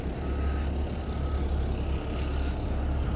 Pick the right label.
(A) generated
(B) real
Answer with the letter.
B